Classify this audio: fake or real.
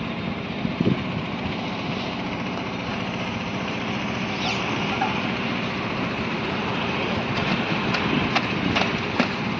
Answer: fake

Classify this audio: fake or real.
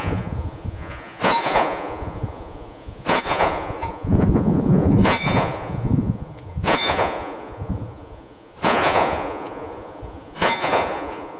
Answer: fake